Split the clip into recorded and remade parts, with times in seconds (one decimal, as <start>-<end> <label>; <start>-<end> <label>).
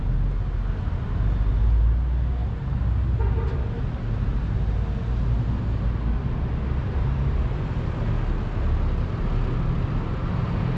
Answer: 0.0-10.8 recorded